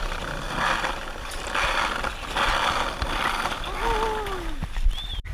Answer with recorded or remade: recorded